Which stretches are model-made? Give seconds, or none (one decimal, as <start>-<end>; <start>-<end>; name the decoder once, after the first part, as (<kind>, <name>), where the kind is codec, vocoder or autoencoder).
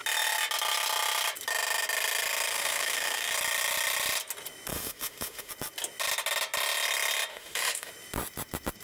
2.5-3.3 (autoencoder, DAC-VAE); 4.7-5.5; 7.3-7.9